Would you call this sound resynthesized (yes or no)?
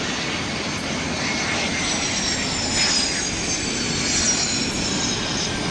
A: no